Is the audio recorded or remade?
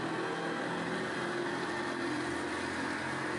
recorded